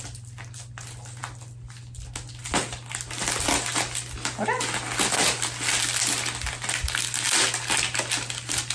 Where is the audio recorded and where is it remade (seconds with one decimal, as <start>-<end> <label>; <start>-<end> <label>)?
0.0-8.7 recorded